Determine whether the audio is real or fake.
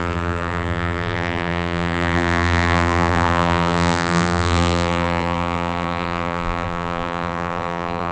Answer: fake